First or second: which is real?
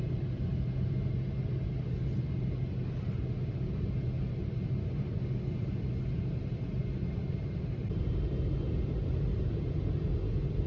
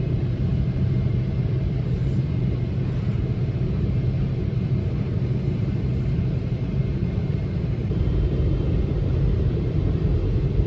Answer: first